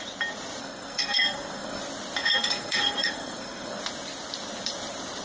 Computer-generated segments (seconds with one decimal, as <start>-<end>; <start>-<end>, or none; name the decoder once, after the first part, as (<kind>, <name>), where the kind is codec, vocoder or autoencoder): 0.6-1.8 (codec, SNAC); 2.2-3.8